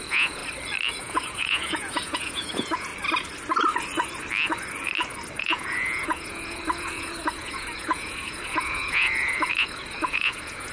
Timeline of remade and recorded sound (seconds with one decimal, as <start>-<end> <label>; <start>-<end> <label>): 0.0-0.4 remade; 0.4-1.0 recorded; 1.0-2.9 remade; 2.9-5.4 recorded; 5.4-10.7 remade